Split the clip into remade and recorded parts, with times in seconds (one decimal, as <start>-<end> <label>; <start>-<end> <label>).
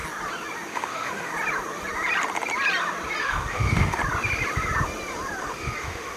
0.0-0.7 recorded; 0.7-1.3 remade; 1.3-3.2 recorded; 3.2-4.0 remade; 4.0-5.4 recorded; 5.4-6.2 remade